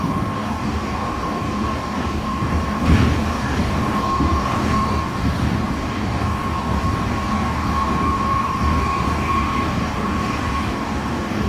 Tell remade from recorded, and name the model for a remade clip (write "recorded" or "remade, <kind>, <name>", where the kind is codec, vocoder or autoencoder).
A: remade, codec, DAC